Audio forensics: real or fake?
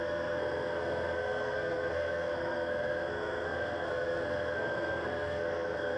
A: fake